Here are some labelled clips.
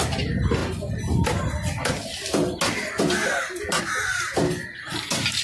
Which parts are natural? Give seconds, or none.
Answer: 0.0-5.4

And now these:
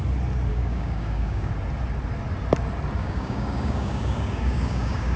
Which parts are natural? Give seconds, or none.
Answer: 0.0-0.5; 1.5-3.0

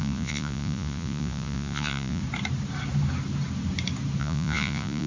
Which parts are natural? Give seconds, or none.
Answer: 2.2-4.2

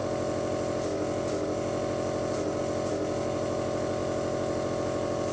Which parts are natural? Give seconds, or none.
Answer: 0.0-5.3

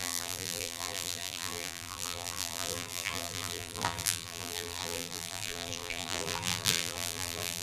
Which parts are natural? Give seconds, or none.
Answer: none

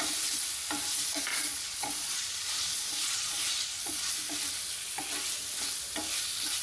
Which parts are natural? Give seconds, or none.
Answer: 0.0-1.3; 4.1-6.6

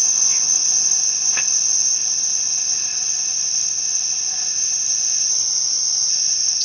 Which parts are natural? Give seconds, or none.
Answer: 5.3-6.1

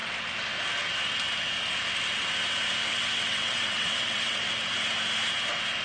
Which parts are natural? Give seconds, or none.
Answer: 0.0-2.8; 4.4-5.8